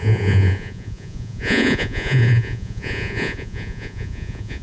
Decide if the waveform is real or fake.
fake